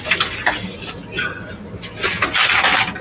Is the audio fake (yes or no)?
no